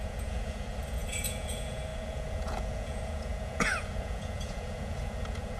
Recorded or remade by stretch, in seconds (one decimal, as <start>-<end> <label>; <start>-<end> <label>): 0.0-5.6 remade